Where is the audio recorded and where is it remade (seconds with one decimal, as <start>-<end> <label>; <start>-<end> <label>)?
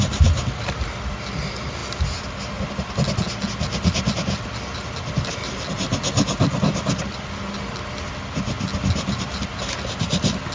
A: 0.0-10.5 recorded